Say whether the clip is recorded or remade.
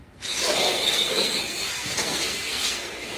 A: remade